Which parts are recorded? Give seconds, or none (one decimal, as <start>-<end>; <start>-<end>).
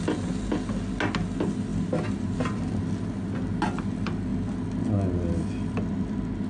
0.0-6.5